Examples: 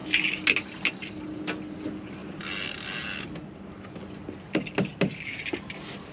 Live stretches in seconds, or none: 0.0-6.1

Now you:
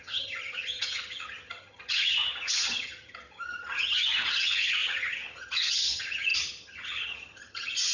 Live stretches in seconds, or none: none

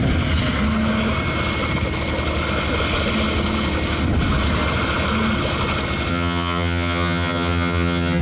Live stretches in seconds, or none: 0.0-6.1

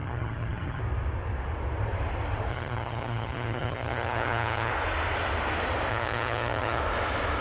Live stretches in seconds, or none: 0.8-2.5; 4.7-5.9; 6.8-7.4

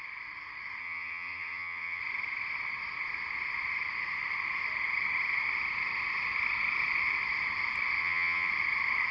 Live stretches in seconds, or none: 0.0-0.8; 2.0-8.0; 8.5-9.1

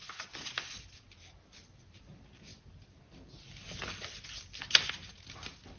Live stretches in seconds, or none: 0.0-5.8